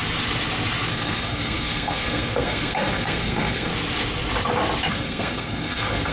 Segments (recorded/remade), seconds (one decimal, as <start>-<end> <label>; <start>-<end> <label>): 0.0-0.9 recorded; 0.9-3.7 remade; 3.7-4.9 recorded; 4.9-6.1 remade